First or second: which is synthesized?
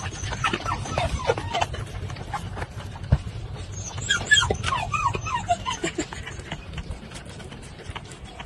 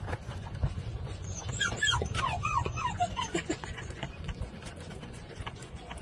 second